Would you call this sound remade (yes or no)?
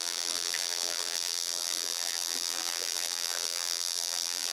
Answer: yes